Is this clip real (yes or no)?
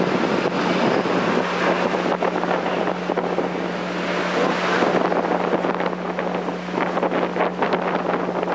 yes